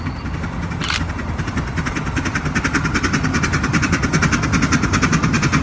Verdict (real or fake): real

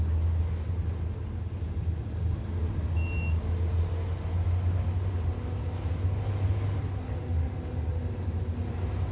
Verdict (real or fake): real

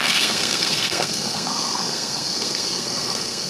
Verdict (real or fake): fake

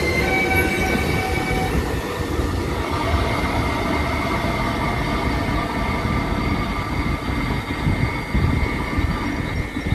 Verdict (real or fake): real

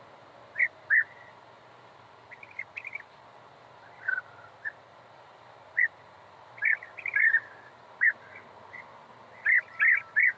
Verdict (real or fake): real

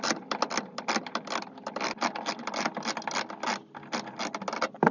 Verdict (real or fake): real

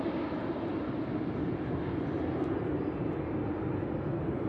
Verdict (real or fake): real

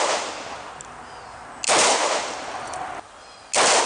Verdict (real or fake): real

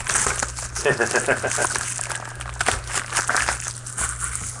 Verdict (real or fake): real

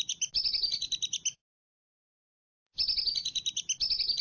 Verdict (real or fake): real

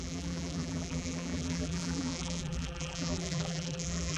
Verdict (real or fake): fake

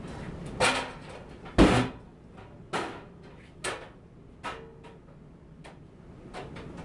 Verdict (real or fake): real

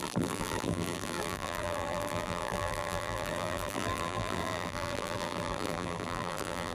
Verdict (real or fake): fake